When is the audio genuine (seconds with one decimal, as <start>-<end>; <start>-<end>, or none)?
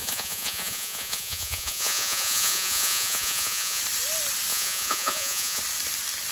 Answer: 3.8-4.5; 5.6-6.3